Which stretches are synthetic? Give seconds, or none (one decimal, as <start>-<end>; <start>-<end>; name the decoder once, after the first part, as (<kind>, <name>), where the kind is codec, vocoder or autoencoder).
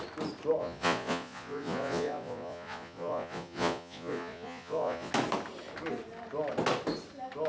0.6-5.1 (vocoder, Vocos)